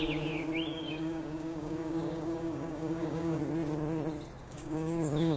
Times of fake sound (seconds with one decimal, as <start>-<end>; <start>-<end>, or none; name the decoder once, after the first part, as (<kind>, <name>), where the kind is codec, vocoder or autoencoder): 0.7-3.4 (codec, DAC); 4.4-5.4